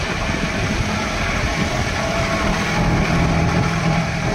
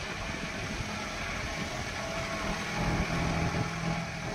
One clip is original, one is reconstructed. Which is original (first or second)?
second